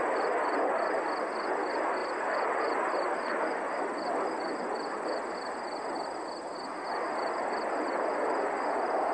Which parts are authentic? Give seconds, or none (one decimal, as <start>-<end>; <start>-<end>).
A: 0.0-9.1

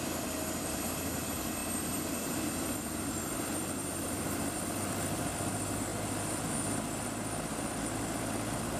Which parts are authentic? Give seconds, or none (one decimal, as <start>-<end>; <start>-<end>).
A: 5.9-7.9